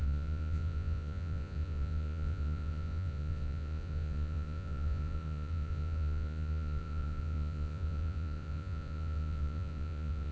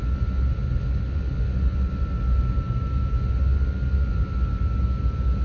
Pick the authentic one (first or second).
second